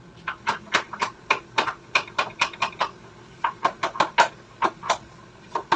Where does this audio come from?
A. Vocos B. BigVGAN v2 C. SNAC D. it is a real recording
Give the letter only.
B